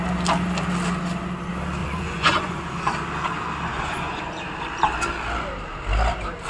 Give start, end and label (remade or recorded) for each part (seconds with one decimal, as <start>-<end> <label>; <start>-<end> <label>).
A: 0.0-1.8 recorded; 1.8-2.6 remade; 2.6-3.7 recorded; 3.7-4.4 remade; 4.4-6.5 recorded

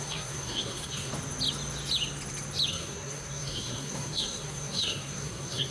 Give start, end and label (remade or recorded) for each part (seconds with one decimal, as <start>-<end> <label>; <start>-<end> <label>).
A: 0.0-1.1 remade; 1.1-2.7 recorded; 2.7-5.7 remade

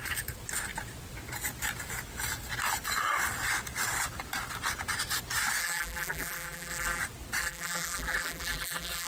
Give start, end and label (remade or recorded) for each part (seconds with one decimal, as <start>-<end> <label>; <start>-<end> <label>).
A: 0.0-5.6 recorded; 5.6-7.0 remade; 7.0-7.4 recorded; 7.4-9.1 remade

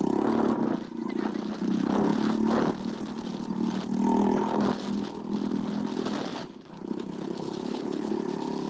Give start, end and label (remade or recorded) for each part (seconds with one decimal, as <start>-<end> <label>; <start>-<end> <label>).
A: 0.0-6.3 recorded; 6.3-8.1 remade; 8.1-8.7 recorded